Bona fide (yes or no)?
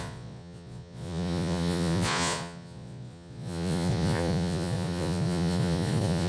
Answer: no